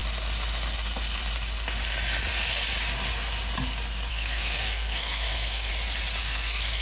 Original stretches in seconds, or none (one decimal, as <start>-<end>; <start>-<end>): 0.0-4.1; 5.7-6.2